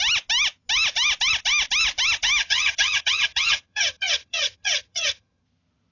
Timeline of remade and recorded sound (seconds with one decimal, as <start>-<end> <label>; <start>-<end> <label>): 0.0-2.4 recorded; 2.4-5.4 remade; 5.4-5.9 recorded